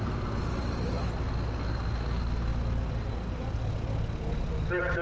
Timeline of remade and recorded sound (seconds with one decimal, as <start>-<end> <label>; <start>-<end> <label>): 0.0-5.0 recorded